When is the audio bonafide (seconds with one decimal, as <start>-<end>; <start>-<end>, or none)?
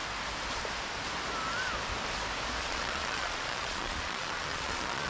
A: 0.0-2.6